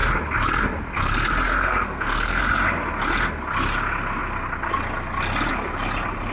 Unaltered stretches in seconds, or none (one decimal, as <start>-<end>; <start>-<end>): 0.0-1.5; 2.4-6.3